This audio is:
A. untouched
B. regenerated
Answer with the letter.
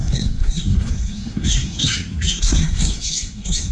B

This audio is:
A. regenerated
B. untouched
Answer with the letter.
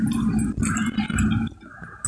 B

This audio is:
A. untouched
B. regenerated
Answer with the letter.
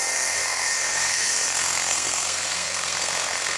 B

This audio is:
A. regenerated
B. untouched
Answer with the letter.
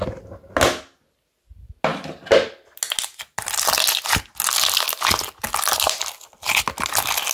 B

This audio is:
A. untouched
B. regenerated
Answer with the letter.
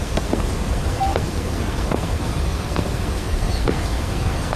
B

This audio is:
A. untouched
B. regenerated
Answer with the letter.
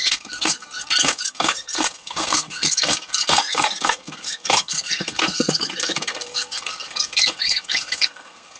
B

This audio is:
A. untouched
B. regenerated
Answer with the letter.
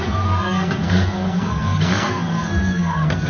B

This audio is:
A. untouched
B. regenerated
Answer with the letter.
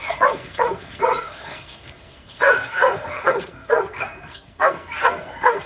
B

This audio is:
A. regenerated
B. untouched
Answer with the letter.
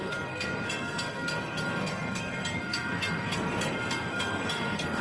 A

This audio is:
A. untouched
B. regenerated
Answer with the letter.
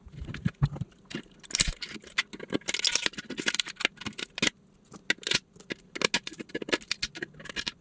A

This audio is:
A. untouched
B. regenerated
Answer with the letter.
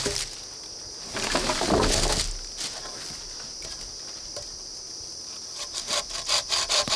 A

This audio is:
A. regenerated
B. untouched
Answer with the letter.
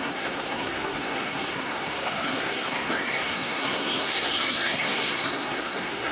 A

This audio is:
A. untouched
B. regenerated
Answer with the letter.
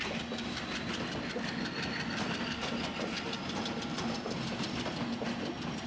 A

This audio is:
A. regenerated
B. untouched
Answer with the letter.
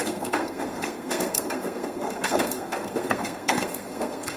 A